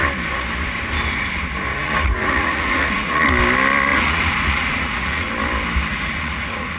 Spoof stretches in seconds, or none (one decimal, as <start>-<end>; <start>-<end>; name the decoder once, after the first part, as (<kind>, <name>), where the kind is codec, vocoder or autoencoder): 1.7-3.3 (vocoder, Vocos); 3.9-5.3; 5.9-6.8